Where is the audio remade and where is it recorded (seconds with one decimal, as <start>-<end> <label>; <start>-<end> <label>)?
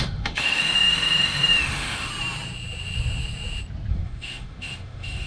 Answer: 0.0-2.1 remade; 2.1-3.9 recorded; 3.9-5.3 remade